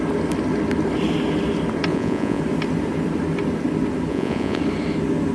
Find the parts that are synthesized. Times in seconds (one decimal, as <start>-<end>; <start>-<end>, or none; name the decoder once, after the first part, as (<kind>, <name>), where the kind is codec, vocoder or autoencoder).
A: 1.9-2.4 (vocoder, Vocos); 4.1-4.6